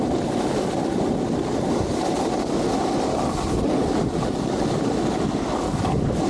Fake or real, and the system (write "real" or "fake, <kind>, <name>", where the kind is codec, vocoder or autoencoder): real